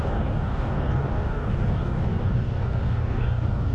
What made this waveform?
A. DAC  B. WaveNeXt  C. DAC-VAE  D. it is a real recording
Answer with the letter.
A